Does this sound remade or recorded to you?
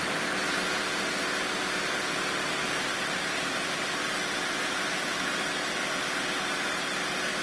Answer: recorded